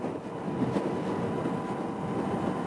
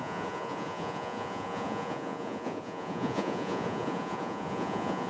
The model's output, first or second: second